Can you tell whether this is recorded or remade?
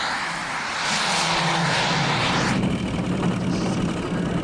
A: recorded